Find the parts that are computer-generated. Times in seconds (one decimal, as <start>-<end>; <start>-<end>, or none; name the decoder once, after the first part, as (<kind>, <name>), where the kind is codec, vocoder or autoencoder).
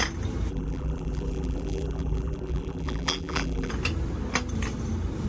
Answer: 0.5-3.7 (vocoder, BigVGAN v2)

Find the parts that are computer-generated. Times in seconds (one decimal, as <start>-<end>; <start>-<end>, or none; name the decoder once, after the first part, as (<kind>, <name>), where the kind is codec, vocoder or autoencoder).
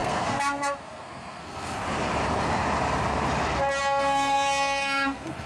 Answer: 0.0-1.8 (codec, SNAC); 3.8-5.5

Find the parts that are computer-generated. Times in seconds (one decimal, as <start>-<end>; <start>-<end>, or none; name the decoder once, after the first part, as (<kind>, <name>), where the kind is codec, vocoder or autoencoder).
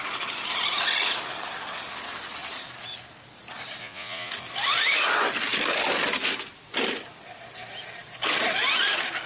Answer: 3.8-4.3 (vocoder, Vocos)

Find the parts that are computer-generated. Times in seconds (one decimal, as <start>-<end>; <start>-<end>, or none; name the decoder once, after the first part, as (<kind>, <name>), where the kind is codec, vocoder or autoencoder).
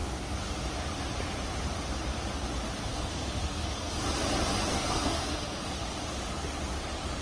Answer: 2.9-3.9 (codec, SNAC); 4.7-5.7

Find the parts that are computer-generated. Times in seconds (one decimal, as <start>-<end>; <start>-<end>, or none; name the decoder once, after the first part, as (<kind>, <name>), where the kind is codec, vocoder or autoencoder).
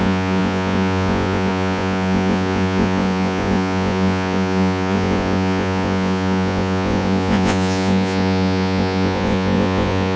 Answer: 0.0-10.2 (vocoder, Vocos)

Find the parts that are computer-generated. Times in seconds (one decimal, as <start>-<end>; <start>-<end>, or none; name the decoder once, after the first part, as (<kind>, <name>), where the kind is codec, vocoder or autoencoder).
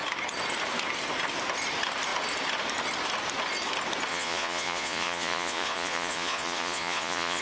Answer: 4.1-7.4 (vocoder, Vocos)